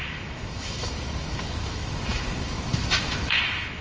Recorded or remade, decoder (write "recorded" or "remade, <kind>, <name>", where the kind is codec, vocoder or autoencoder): remade, autoencoder, DAC-VAE